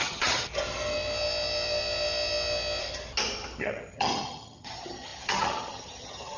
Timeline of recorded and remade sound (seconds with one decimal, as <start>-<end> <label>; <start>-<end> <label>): 0.0-0.5 remade; 0.5-3.6 recorded; 3.6-6.4 remade